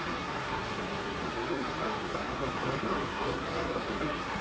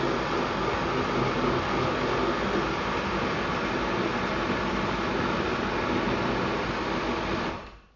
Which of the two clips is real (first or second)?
second